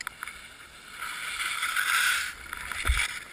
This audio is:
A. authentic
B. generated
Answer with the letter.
A